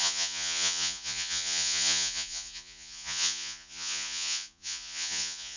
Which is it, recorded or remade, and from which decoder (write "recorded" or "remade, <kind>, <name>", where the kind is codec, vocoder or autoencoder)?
remade, vocoder, Vocos